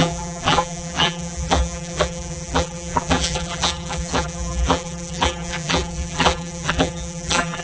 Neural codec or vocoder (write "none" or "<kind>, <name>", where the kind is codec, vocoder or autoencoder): vocoder, BigVGAN v2